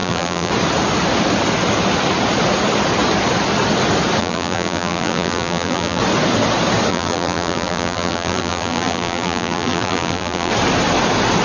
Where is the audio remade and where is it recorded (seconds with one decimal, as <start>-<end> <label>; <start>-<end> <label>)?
0.0-0.5 remade; 0.5-4.2 recorded; 4.2-6.0 remade; 6.0-6.9 recorded; 6.9-10.5 remade; 10.5-11.4 recorded